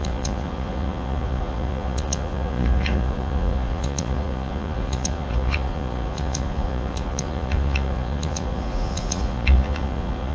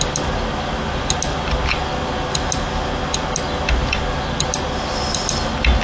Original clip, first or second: second